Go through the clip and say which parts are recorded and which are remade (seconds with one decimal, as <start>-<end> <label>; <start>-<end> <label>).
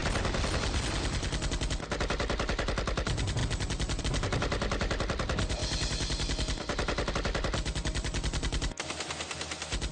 0.0-2.0 recorded; 2.0-3.4 remade; 3.4-4.0 recorded; 4.0-5.6 remade; 5.6-7.1 recorded; 7.1-9.9 remade